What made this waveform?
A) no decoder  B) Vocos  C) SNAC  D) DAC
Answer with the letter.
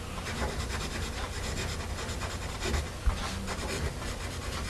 A